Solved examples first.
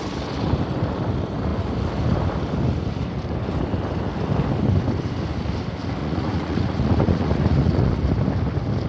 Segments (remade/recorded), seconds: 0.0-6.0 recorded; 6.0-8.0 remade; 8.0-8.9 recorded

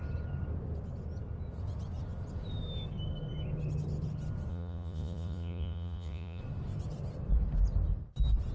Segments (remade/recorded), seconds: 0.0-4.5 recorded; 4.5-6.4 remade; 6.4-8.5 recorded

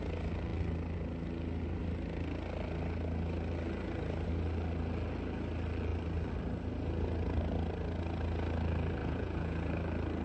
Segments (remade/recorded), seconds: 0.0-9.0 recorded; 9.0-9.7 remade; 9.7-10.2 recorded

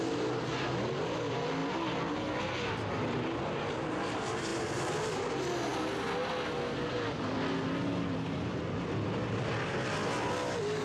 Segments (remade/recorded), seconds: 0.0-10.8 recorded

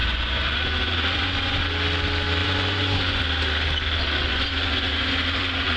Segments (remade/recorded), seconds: 0.0-1.6 remade; 1.6-2.4 recorded; 2.4-3.2 remade; 3.2-4.3 recorded; 4.3-5.8 remade

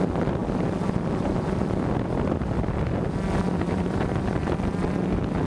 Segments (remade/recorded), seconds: 0.0-5.5 recorded